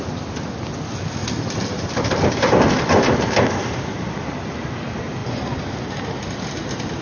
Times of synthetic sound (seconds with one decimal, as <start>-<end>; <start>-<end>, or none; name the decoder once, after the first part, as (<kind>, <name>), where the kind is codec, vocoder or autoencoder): none